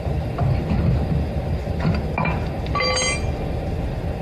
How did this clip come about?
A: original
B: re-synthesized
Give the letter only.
A